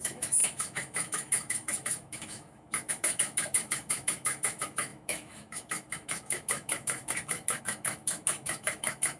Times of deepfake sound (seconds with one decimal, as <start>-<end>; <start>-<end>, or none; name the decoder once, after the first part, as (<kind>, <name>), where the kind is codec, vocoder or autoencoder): 0.0-9.2 (autoencoder, DAC-VAE)